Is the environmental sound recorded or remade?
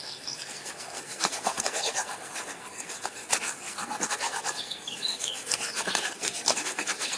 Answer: remade